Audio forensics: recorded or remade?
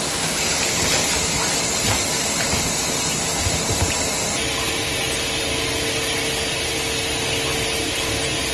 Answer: recorded